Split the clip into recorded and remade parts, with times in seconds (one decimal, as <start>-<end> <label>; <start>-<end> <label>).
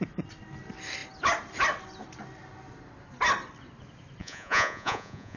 0.0-4.2 recorded; 4.2-5.4 remade